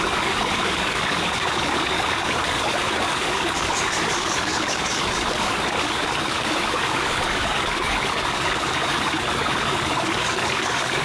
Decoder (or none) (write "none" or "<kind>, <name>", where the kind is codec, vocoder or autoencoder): codec, DAC